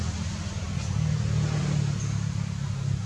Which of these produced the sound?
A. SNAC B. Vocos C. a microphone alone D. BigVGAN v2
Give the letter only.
C